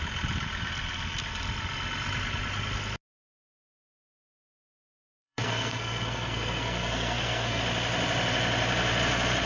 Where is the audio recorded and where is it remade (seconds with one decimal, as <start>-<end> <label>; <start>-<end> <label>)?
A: 0.0-5.0 recorded; 5.0-7.6 remade; 7.6-9.5 recorded